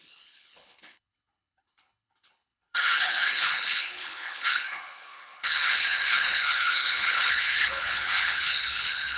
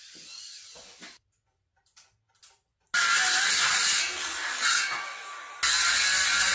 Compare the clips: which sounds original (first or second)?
second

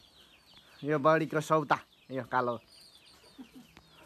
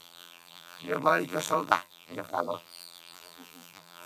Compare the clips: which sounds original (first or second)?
first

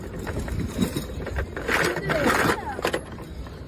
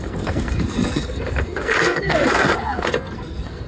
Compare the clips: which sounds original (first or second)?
first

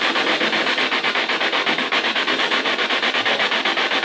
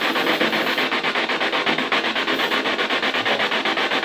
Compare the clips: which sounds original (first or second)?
second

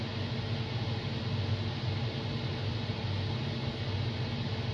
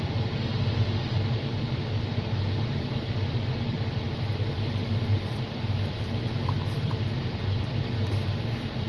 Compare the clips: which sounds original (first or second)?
first